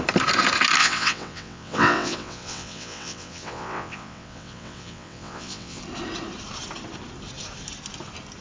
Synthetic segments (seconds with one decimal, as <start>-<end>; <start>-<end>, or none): 0.8-5.8

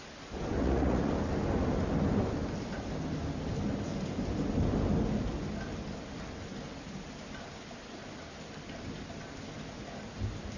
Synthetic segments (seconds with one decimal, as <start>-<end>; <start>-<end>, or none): 0.6-1.1

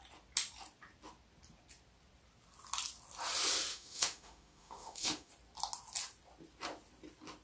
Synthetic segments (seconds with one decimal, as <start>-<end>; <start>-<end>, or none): 3.7-5.3